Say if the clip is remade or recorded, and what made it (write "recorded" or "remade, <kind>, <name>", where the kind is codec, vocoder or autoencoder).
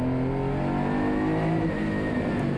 recorded